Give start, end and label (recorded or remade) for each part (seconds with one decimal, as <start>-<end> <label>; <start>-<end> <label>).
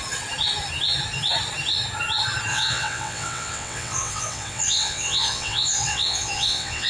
0.0-2.5 recorded; 2.5-6.9 remade